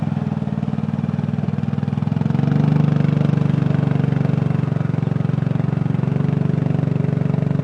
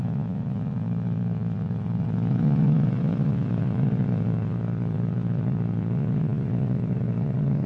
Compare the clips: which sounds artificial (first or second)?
second